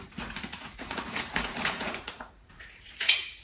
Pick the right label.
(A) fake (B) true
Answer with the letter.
A